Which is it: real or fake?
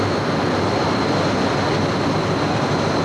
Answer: real